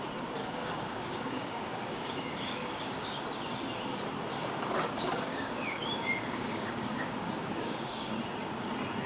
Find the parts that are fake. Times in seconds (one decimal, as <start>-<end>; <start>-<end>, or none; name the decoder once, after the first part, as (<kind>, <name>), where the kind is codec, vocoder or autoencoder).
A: 0.4-3.2 (codec, DAC); 4.3-8.1